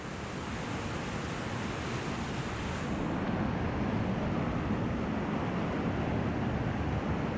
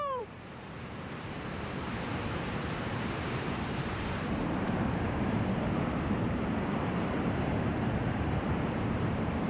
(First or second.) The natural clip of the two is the first